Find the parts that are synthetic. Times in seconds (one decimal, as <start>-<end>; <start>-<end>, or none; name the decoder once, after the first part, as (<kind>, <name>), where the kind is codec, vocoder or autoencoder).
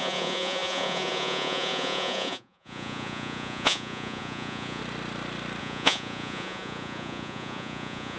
0.0-4.8 (vocoder, Vocos); 5.6-8.2